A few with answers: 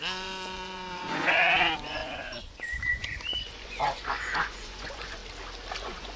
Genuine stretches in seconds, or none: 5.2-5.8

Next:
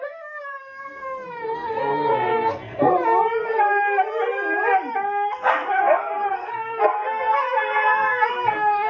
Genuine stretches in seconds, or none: 2.9-5.3

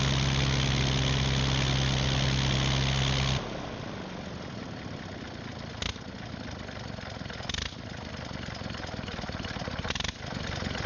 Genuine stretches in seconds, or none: 0.0-10.9